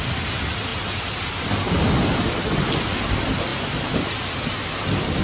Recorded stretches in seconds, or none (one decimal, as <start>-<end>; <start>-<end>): 0.0-5.2